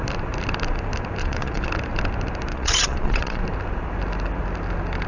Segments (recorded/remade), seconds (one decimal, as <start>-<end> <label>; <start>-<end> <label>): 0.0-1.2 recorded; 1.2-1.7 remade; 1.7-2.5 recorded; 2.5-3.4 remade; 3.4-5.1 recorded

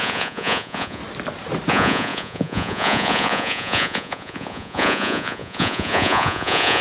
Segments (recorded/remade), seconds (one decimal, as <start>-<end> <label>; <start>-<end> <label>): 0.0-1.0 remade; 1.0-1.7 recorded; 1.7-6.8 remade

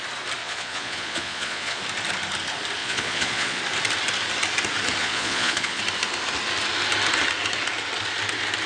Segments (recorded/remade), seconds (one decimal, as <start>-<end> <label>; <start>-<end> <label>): 0.0-0.4 recorded; 0.4-1.8 remade; 1.8-2.8 recorded; 2.8-3.6 remade; 3.6-5.0 recorded; 5.0-5.8 remade; 5.8-8.7 recorded

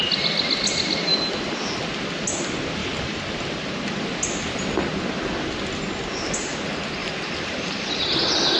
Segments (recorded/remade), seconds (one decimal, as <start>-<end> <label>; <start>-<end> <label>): 0.0-8.6 recorded